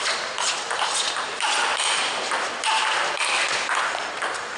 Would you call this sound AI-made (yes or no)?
no